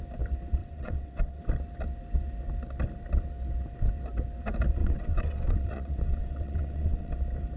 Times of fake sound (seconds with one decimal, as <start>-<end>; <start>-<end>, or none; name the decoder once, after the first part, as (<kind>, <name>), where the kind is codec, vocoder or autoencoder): 0.6-1.4 (vocoder, WaveNeXt); 4.8-7.1